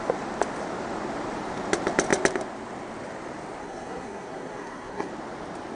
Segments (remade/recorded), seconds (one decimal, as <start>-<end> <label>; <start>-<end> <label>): 0.0-3.6 recorded; 3.6-5.1 remade; 5.1-5.8 recorded